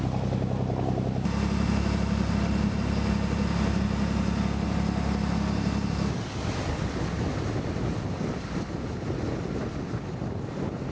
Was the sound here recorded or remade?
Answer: recorded